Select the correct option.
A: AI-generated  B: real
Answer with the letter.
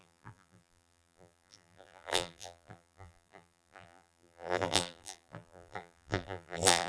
A